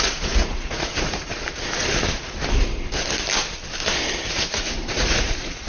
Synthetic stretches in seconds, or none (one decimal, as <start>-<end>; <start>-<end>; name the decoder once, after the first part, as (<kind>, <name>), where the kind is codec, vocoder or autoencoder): 0.0-1.3 (vocoder, Vocos); 4.3-5.7